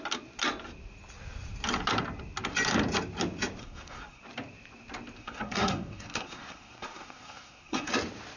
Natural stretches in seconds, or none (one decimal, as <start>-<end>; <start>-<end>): 0.0-3.6; 4.2-5.2; 7.9-8.4